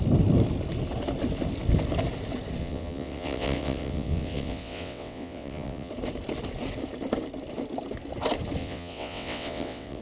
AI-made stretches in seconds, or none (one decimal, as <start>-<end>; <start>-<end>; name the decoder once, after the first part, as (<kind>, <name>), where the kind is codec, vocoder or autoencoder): 2.6-5.9 (vocoder, WaveNeXt); 8.6-10.0